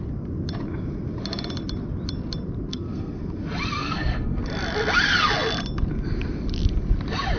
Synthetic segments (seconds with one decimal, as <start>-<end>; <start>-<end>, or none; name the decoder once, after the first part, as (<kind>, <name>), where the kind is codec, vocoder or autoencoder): 2.7-3.2 (codec, SNAC); 3.8-4.4